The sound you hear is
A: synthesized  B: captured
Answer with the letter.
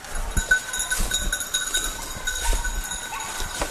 B